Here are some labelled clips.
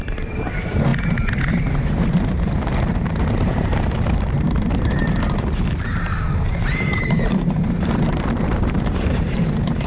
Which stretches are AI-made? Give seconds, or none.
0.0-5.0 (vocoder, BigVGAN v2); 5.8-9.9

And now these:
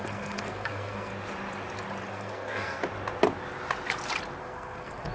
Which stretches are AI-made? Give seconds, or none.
0.0-1.1 (codec, SNAC); 2.1-2.8; 4.4-5.1

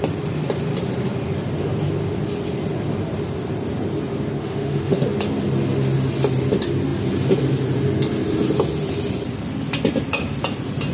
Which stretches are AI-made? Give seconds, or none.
4.4-5.0 (autoencoder, DAC-VAE)

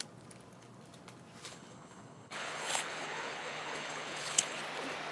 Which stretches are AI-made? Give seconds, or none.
1.5-4.6 (codec, HILCodec)

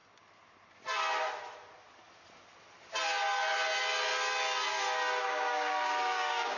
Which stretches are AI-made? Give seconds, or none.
4.7-6.6 (codec, DAC)

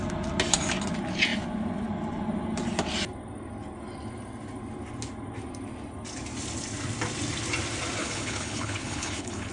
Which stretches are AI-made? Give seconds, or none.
8.0-9.5 (codec, HILCodec)

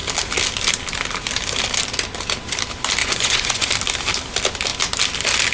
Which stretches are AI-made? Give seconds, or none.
3.0-3.7 (vocoder, Vocos)